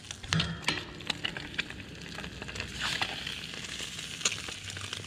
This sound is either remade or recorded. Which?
recorded